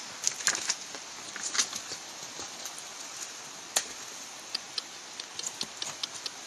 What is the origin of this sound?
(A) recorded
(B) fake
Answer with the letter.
A